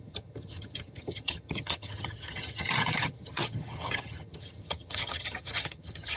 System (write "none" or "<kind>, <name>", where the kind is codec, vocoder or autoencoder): vocoder, HiFi-GAN